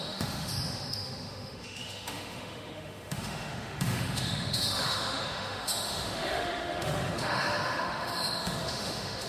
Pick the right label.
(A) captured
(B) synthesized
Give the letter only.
B